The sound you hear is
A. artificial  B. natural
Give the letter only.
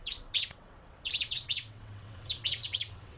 A